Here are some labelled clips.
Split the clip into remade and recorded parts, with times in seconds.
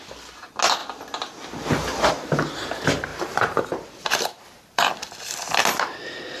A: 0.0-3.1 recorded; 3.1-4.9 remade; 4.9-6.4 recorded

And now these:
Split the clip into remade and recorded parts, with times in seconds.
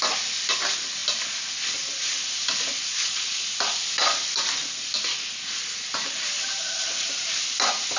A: 0.0-8.0 recorded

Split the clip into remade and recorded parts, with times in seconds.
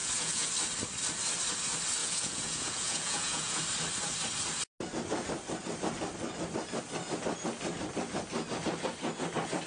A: 0.0-0.5 remade; 0.5-2.0 recorded; 2.0-3.6 remade; 3.6-9.7 recorded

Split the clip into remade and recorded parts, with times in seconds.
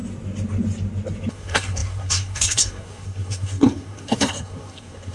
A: 0.0-1.3 recorded; 1.3-5.1 remade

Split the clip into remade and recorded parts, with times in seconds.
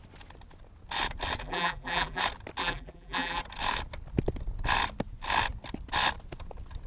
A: 0.0-1.4 recorded; 1.4-2.2 remade; 2.2-2.6 recorded; 2.6-3.4 remade; 3.4-6.9 recorded